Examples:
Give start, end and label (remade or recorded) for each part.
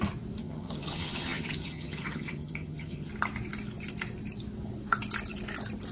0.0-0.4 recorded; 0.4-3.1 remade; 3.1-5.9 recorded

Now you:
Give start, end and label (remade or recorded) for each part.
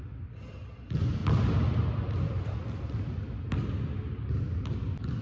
0.0-5.2 recorded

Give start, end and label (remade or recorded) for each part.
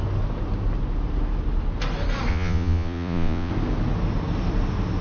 0.0-2.3 recorded; 2.3-3.5 remade; 3.5-5.0 recorded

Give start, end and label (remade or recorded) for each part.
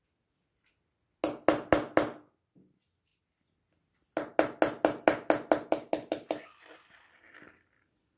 0.0-8.2 recorded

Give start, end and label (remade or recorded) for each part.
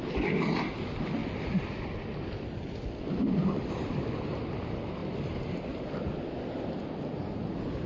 0.0-5.0 recorded; 5.0-6.0 remade; 6.0-6.8 recorded; 6.8-7.4 remade; 7.4-7.9 recorded